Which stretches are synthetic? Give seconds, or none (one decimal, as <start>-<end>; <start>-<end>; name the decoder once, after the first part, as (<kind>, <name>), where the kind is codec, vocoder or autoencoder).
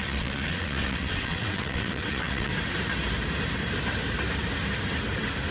0.0-2.5 (vocoder, WaveNeXt)